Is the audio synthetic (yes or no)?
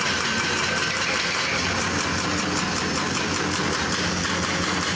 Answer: no